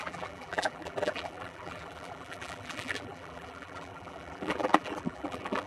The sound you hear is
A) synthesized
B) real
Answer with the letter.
A